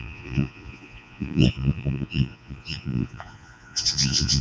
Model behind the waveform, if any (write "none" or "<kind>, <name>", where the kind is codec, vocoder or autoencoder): vocoder, Vocos